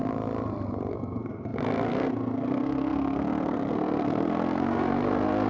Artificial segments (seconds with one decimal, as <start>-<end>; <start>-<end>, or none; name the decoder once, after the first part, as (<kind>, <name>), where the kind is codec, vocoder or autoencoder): 0.9-5.5 (codec, SNAC)